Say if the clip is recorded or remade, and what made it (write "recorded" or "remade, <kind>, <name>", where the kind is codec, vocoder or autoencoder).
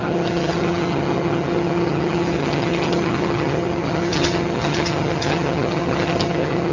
remade, vocoder, HiFi-GAN